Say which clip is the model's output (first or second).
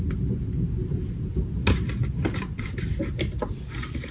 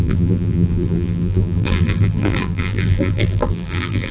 second